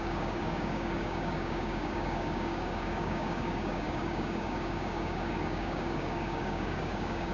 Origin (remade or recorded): remade